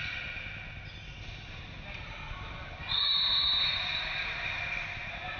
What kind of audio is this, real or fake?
real